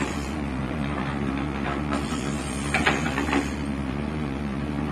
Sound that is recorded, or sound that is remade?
remade